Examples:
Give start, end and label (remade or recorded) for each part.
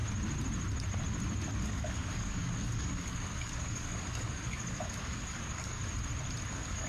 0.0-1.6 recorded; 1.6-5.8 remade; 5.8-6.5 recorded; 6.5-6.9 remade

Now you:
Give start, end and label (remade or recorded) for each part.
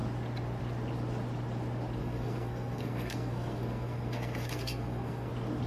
0.0-2.0 recorded; 2.0-5.3 remade; 5.3-5.7 recorded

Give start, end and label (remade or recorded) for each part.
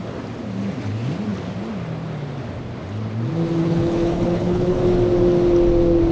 0.0-3.6 recorded; 3.6-4.8 remade; 4.8-6.1 recorded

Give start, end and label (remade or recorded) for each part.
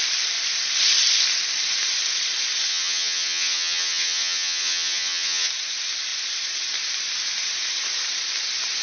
0.0-2.7 recorded; 2.7-5.5 remade; 5.5-8.8 recorded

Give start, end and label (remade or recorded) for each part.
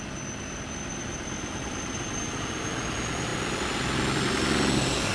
0.0-5.1 recorded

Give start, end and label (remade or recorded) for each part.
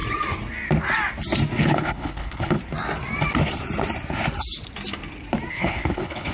0.0-1.6 recorded; 1.6-2.6 remade; 2.6-5.5 recorded; 5.5-6.3 remade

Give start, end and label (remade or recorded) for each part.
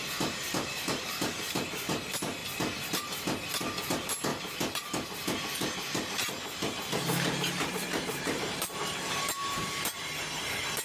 0.0-2.4 remade; 2.4-3.9 recorded; 3.9-4.3 remade; 4.3-6.9 recorded; 6.9-10.8 remade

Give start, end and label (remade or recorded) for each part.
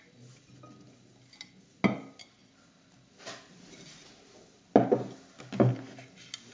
0.0-6.5 recorded